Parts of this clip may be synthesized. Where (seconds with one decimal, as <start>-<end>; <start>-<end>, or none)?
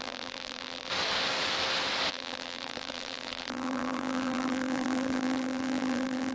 0.0-0.9; 2.1-6.3